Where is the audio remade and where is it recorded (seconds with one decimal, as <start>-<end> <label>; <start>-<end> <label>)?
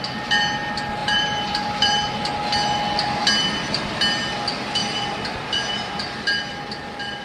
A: 0.0-1.0 recorded; 1.0-1.9 remade; 1.9-3.2 recorded; 3.2-3.9 remade; 3.9-4.8 recorded; 4.8-6.4 remade; 6.4-7.2 recorded